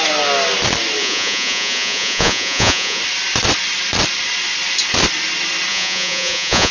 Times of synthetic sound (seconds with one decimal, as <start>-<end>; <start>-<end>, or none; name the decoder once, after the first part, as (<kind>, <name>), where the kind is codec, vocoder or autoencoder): 1.0-3.0 (vocoder, Vocos); 5.7-6.7